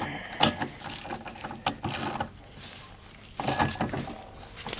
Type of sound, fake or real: real